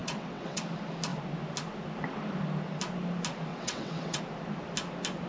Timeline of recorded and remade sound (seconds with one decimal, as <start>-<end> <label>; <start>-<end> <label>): 0.0-0.6 remade; 0.6-3.5 recorded; 3.5-4.2 remade; 4.2-5.3 recorded